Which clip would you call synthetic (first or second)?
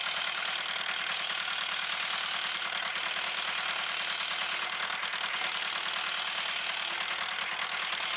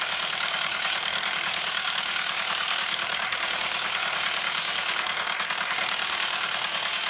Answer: second